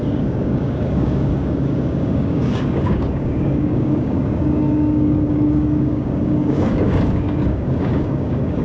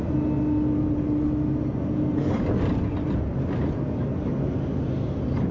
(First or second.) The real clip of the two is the second